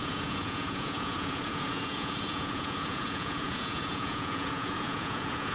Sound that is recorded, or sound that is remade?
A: remade